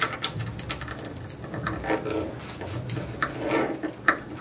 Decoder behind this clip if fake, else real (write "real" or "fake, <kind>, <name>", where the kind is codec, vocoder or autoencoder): real